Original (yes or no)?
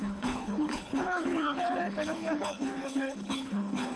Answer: no